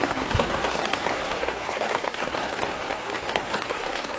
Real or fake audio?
fake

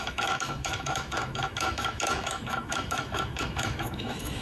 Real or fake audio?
fake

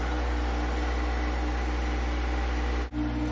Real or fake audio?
real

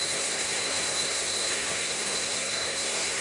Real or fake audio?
fake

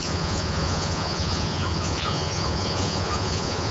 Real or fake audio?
fake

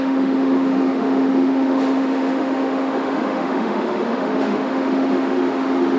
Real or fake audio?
fake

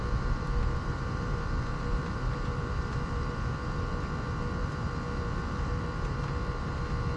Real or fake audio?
fake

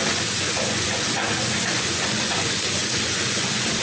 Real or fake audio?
fake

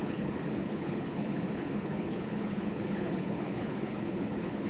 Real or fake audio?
fake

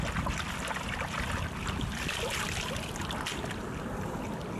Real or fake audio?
real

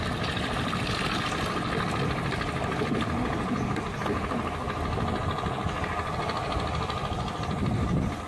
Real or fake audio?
real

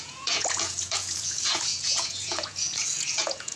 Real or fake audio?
fake